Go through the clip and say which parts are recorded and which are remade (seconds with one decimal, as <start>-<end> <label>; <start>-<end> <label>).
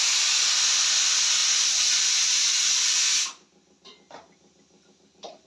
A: 0.0-5.5 recorded